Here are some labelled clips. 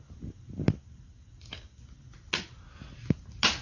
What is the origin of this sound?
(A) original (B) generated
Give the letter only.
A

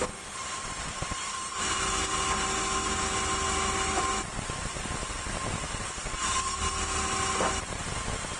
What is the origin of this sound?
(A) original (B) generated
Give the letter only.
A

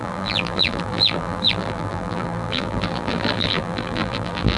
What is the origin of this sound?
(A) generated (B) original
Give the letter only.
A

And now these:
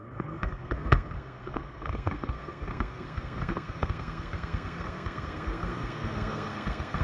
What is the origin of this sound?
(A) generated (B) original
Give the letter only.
A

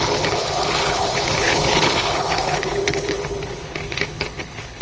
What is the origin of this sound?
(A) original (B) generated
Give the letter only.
B